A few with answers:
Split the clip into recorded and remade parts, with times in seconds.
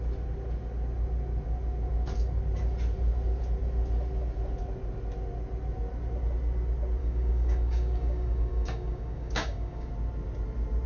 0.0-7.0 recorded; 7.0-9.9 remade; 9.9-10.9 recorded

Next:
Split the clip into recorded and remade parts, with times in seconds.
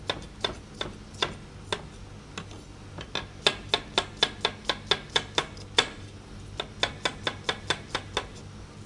0.0-8.9 recorded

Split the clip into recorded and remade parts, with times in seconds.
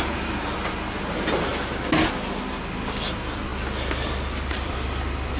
0.0-1.5 remade; 1.5-2.5 recorded; 2.5-3.5 remade; 3.5-4.5 recorded; 4.5-5.4 remade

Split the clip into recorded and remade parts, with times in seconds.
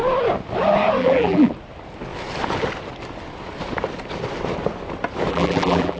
0.0-1.0 recorded; 1.0-1.5 remade; 1.5-5.3 recorded; 5.3-6.0 remade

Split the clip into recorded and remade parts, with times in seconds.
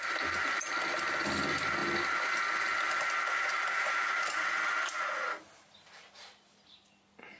0.0-7.4 recorded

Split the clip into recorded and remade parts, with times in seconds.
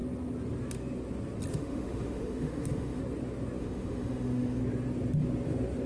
0.0-1.5 recorded; 1.5-3.0 remade; 3.0-3.6 recorded; 3.6-4.6 remade; 4.6-5.9 recorded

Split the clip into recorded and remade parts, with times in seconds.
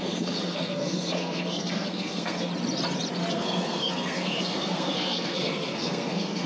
0.0-2.5 remade; 2.5-3.3 recorded; 3.3-6.5 remade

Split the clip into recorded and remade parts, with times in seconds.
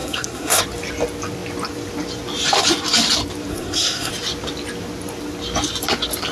0.0-0.6 remade; 0.6-3.5 recorded; 3.5-4.1 remade; 4.1-6.3 recorded